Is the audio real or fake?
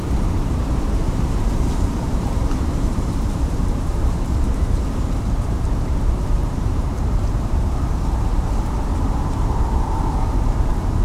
fake